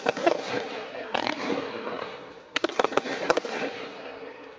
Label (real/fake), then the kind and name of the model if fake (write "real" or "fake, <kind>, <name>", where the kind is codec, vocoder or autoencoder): fake, codec, SNAC